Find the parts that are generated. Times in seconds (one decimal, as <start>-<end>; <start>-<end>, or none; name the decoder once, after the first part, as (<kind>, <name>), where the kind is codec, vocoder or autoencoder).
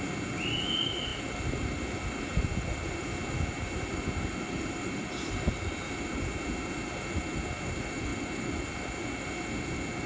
1.1-5.9 (vocoder, BigVGAN v2); 8.1-9.3